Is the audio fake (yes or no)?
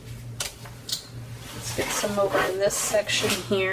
no